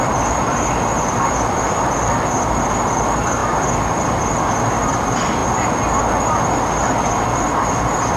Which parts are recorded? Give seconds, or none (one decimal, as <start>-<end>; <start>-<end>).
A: 0.0-8.2